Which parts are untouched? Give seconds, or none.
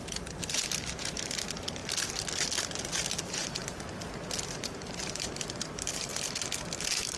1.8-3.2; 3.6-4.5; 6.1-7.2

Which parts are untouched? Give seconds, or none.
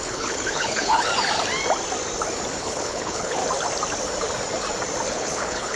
1.1-2.6; 3.4-5.1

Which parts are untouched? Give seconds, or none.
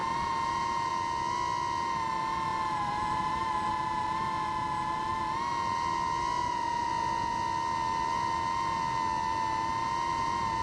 0.9-2.5; 3.7-6.4; 6.9-10.6